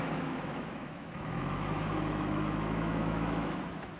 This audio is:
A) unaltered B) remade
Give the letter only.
B